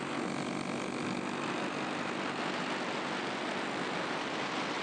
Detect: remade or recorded recorded